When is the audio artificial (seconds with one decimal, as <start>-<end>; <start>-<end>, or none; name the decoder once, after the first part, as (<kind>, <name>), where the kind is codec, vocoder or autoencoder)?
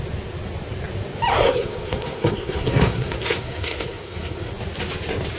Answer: 1.3-4.5 (codec, SNAC)